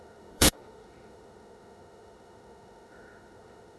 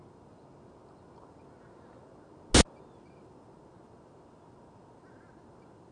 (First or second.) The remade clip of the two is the first